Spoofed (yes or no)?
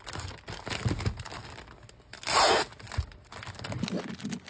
no